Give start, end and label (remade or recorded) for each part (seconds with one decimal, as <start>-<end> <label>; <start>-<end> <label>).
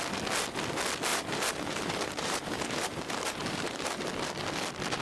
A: 0.0-1.1 recorded; 1.1-4.1 remade; 4.1-5.0 recorded